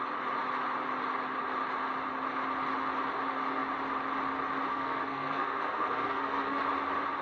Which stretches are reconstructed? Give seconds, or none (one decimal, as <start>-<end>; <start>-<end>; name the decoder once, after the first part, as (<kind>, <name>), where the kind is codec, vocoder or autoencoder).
4.7-6.6 (codec, SNAC)